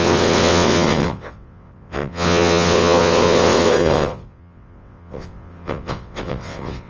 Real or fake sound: fake